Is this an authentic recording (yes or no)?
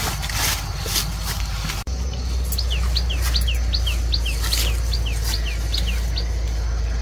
yes